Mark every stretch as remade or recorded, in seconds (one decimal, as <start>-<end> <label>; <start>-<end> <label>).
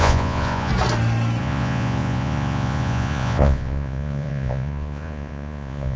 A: 0.0-0.7 remade; 0.7-1.4 recorded; 1.4-6.0 remade